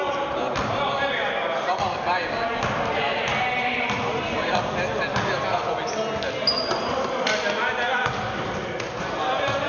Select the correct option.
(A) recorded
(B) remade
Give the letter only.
A